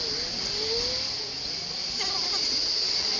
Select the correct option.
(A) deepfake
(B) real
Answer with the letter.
B